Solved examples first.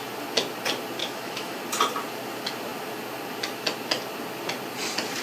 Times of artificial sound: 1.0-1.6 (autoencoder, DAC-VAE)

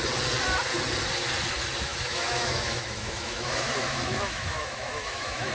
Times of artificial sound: 1.9-5.5 (autoencoder, DAC-VAE)